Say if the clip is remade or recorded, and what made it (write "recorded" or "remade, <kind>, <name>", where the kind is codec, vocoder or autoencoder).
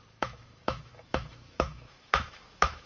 remade, autoencoder, DAC-VAE